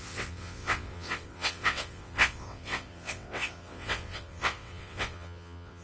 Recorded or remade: remade